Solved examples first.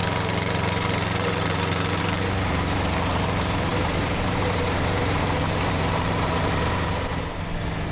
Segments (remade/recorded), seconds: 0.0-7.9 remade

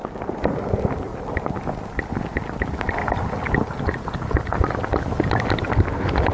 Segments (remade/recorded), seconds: 0.0-0.7 remade; 0.7-1.1 recorded; 1.1-3.0 remade; 3.0-6.3 recorded